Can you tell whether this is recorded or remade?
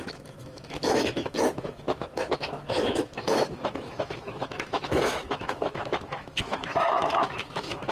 remade